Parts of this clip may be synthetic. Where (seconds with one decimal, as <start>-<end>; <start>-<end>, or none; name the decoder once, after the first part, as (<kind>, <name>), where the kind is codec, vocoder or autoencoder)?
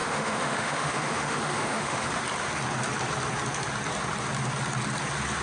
0.0-2.1 (autoencoder, DAC-VAE)